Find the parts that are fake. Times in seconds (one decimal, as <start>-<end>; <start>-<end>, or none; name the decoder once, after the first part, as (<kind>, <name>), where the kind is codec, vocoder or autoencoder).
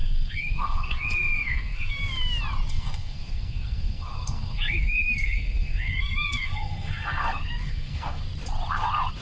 0.0-2.0 (codec, SNAC); 2.7-8.2